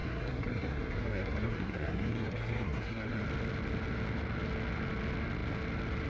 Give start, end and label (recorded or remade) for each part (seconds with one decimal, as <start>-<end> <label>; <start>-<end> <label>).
0.0-3.2 remade; 3.2-6.1 recorded